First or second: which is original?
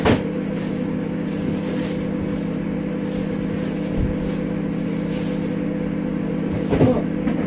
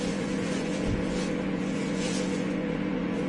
first